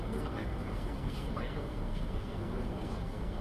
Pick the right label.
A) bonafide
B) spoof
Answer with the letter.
B